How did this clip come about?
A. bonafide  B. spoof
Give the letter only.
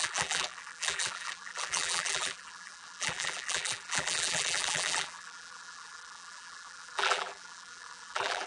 B